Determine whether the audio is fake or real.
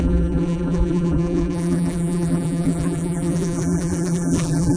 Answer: fake